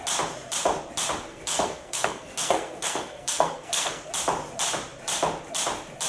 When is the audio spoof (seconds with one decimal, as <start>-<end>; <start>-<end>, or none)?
1.3-4.1

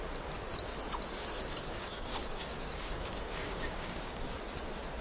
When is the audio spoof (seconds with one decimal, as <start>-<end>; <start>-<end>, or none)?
1.2-4.2